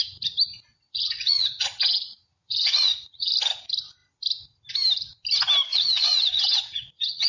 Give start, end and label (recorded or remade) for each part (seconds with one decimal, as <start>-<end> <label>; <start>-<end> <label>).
0.0-0.7 recorded; 0.7-3.3 remade; 3.3-5.7 recorded; 5.7-7.3 remade